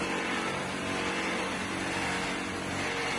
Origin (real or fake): real